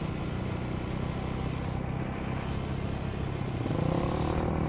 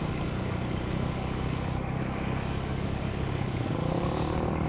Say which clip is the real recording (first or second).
first